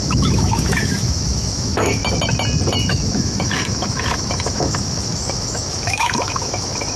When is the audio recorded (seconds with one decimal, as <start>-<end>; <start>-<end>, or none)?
2.0-2.8